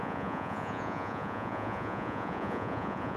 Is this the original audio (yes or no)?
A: no